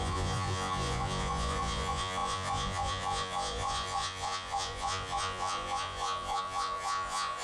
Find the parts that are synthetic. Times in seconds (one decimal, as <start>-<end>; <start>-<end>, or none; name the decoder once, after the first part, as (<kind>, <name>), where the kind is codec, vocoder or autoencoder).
0.0-7.4 (vocoder, Vocos)